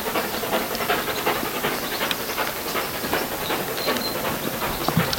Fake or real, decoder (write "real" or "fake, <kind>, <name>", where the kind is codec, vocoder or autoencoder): real